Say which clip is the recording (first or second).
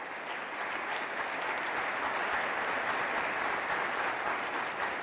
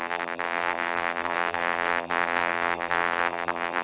first